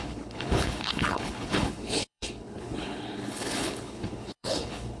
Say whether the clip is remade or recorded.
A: remade